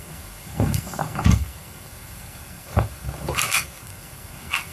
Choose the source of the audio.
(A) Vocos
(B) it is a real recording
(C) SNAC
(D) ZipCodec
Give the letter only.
C